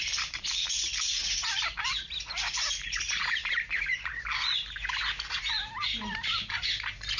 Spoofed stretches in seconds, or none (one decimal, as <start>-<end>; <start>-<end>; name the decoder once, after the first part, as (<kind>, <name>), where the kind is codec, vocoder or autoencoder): 0.0-7.2 (vocoder, BigVGAN v2)